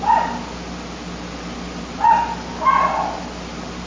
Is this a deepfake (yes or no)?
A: no